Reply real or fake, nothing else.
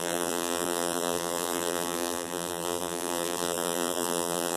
fake